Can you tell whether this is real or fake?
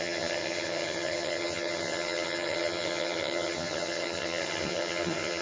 fake